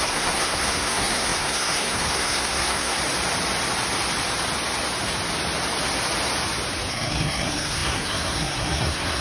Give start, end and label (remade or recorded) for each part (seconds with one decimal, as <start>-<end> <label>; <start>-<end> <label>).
0.0-3.0 remade; 3.0-6.9 recorded; 6.9-9.2 remade